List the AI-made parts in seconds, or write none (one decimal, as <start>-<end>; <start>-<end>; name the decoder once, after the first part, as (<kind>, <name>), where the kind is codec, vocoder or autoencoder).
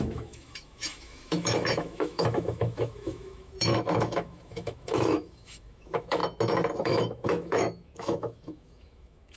0.0-6.2 (autoencoder, DAC-VAE); 6.8-9.4